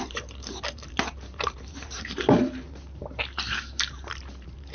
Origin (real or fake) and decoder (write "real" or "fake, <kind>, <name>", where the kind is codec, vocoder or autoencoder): fake, vocoder, BigVGAN v2